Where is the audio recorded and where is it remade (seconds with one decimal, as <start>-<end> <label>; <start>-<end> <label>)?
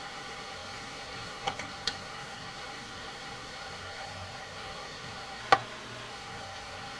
0.0-5.4 remade; 5.4-6.1 recorded; 6.1-7.0 remade